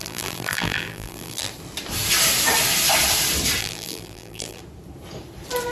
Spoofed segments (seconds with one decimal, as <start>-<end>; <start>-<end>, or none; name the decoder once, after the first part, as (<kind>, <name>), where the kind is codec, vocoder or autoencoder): 0.0-1.5 (vocoder, BigVGAN v2); 3.6-4.6